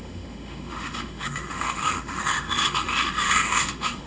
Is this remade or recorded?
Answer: remade